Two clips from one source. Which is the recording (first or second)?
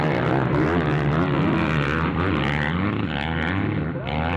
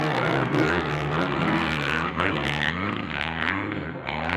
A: first